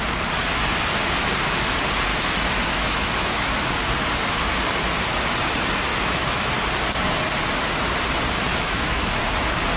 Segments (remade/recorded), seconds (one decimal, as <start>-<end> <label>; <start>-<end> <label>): 0.0-2.1 recorded; 2.1-3.5 remade; 3.5-5.9 recorded; 5.9-6.5 remade; 6.5-8.5 recorded; 8.5-9.2 remade; 9.2-9.8 recorded